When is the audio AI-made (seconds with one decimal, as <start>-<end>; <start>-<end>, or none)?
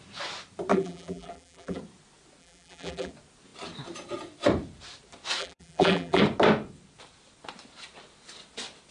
0.7-1.8; 2.4-3.1; 5.4-6.2